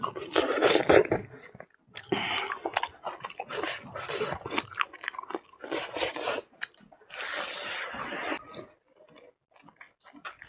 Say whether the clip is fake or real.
real